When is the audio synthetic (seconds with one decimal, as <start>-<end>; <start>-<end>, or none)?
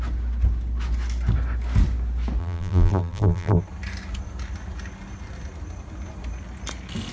2.4-3.6